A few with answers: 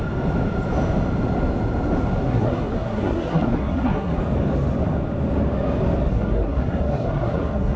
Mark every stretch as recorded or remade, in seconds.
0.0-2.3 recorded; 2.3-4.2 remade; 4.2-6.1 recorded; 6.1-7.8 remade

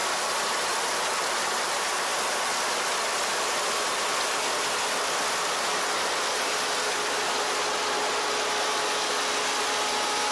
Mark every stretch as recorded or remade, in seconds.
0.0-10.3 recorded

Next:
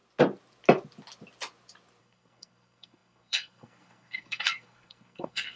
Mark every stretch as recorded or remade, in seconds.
0.0-2.0 recorded; 2.0-5.6 remade

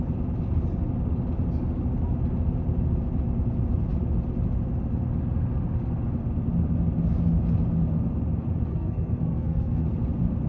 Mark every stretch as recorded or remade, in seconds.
0.0-8.7 recorded; 8.7-9.8 remade; 9.8-10.5 recorded

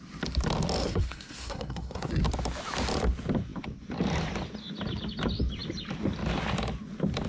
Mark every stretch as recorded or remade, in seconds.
0.0-0.8 recorded; 0.8-2.1 remade; 2.1-7.3 recorded

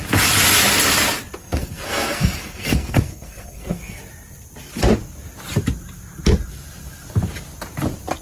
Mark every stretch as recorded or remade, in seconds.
0.0-1.4 recorded; 1.4-4.0 remade; 4.0-8.2 recorded

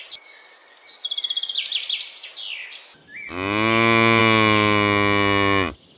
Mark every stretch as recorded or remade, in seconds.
0.0-6.0 recorded

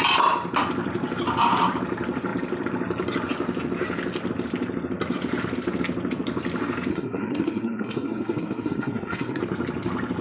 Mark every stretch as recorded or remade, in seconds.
0.0-6.9 recorded; 6.9-9.4 remade; 9.4-10.2 recorded